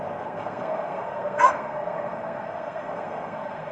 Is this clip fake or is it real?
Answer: fake